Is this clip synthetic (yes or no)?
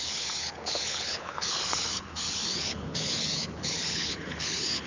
yes